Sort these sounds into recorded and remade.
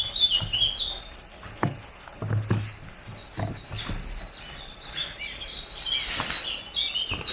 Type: recorded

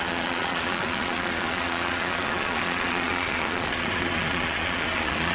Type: remade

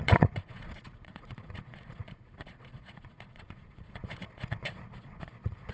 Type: remade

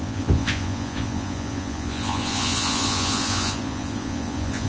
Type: remade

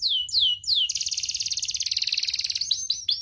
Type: recorded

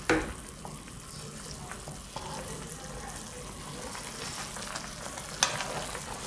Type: recorded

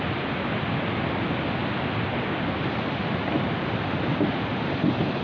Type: recorded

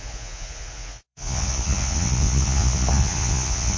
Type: remade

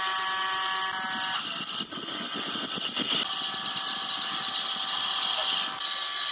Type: recorded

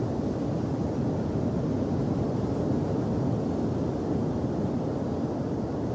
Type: recorded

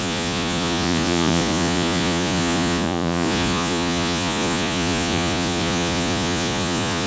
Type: remade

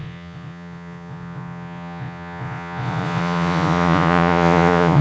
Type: remade